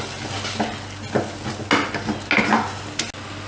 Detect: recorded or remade recorded